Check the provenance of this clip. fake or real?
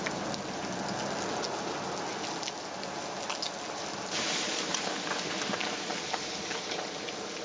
real